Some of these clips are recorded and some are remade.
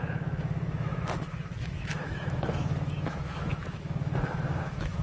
remade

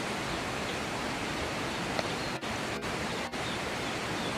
remade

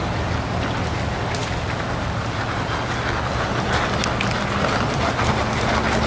recorded